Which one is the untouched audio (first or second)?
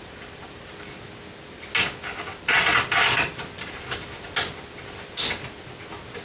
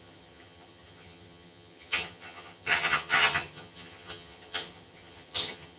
first